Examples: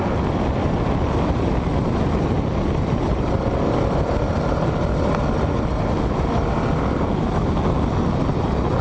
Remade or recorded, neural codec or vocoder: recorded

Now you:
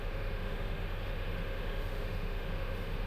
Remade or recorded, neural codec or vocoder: remade, autoencoder, DAC-VAE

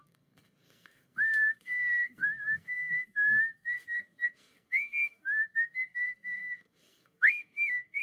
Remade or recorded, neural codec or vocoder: remade, codec, SNAC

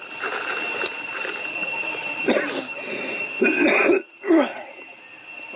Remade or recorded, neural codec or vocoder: recorded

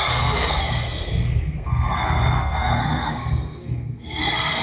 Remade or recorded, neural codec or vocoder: remade, codec, SNAC